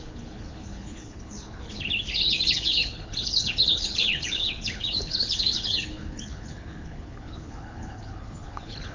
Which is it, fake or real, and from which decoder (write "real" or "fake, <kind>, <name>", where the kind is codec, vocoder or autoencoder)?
fake, codec, HILCodec